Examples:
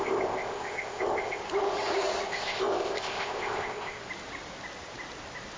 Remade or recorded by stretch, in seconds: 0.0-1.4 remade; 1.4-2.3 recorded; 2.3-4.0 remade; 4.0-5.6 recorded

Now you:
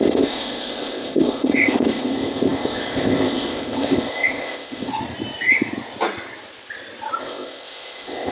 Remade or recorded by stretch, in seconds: 0.0-4.9 remade; 4.9-7.2 recorded; 7.2-8.3 remade

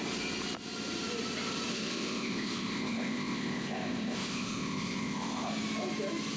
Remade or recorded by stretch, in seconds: 0.0-1.7 recorded; 1.7-5.5 remade; 5.5-6.4 recorded

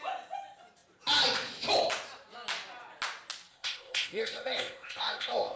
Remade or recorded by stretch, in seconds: 0.0-3.5 recorded; 3.5-5.6 remade